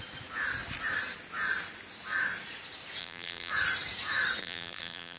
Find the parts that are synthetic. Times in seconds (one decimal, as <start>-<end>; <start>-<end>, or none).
3.0-3.5; 4.4-5.2